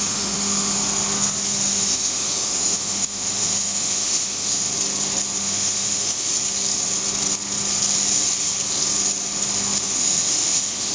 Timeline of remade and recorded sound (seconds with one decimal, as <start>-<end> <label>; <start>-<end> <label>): 0.0-0.8 remade; 0.8-1.7 recorded; 1.7-4.7 remade; 4.7-5.4 recorded; 5.4-6.3 remade; 6.3-9.8 recorded; 9.8-10.9 remade